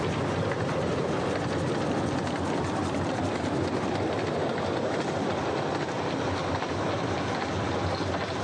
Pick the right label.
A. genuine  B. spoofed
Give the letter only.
A